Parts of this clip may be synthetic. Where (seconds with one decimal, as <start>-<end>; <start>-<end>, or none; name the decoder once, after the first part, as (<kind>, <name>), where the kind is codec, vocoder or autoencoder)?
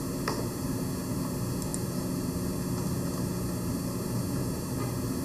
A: none